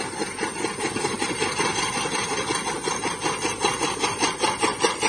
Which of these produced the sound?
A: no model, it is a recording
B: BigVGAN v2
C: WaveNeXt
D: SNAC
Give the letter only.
A